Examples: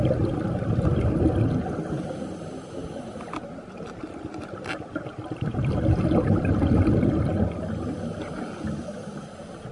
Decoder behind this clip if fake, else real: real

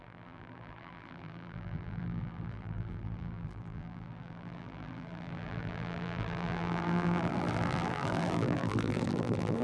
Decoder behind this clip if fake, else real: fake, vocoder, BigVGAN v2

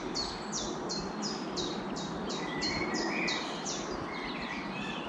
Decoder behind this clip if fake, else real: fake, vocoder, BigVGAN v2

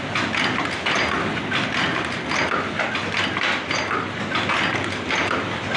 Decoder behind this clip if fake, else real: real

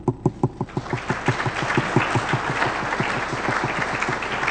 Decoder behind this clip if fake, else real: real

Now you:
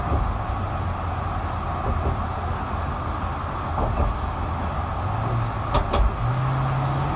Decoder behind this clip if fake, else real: real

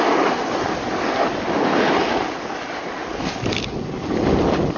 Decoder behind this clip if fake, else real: real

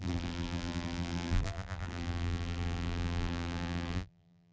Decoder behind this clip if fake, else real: fake, vocoder, BigVGAN v2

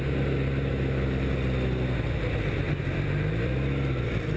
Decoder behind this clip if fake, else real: fake, vocoder, BigVGAN v2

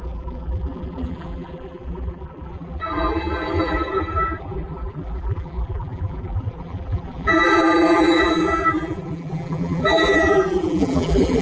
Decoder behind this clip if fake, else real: fake, vocoder, BigVGAN v2